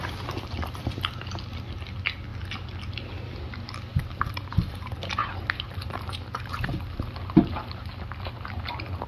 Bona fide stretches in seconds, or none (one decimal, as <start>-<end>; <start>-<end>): 0.0-3.9; 4.6-5.2; 6.5-9.1